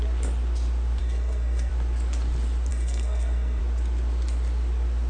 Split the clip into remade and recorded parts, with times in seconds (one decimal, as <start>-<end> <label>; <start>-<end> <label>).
0.0-1.0 recorded; 1.0-1.7 remade; 1.7-2.7 recorded; 2.7-3.6 remade; 3.6-5.1 recorded